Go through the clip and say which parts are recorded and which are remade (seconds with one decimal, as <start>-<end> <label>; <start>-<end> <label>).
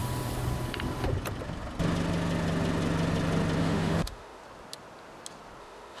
0.0-3.6 recorded; 3.6-4.4 remade; 4.4-5.6 recorded; 5.6-6.0 remade